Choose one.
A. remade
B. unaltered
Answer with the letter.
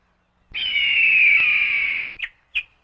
B